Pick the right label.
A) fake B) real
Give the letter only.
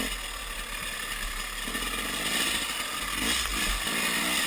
B